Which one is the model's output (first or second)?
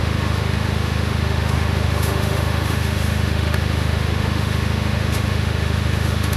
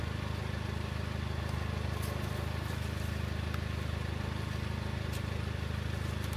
first